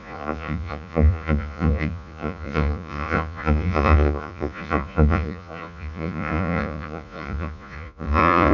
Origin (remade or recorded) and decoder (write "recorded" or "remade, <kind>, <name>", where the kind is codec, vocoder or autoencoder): remade, vocoder, Vocos